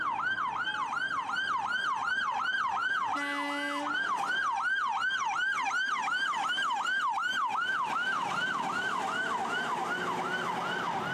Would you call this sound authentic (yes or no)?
yes